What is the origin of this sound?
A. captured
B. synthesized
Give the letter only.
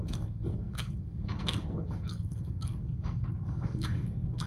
B